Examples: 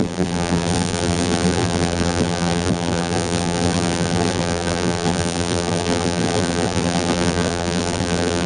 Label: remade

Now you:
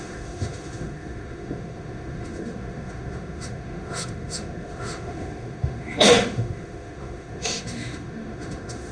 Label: remade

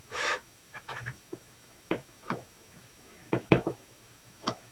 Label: remade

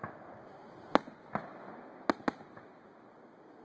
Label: recorded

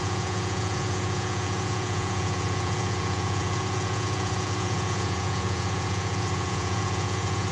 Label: remade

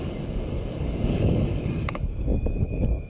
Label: remade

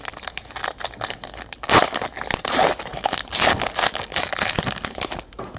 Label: recorded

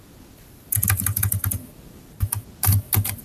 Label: recorded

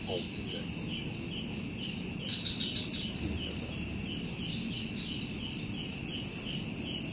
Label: recorded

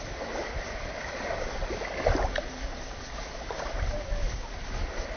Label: recorded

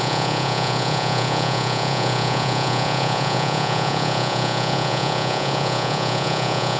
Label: remade